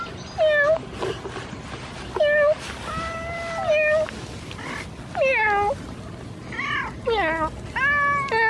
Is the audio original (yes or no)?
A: yes